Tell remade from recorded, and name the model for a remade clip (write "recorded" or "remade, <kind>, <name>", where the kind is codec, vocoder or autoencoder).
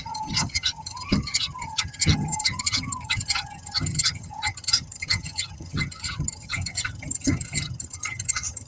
remade, vocoder, HiFi-GAN